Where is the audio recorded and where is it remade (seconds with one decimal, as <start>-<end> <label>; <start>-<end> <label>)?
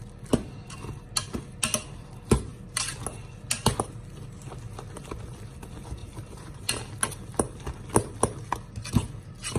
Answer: 0.0-6.0 recorded; 6.0-6.9 remade; 6.9-9.6 recorded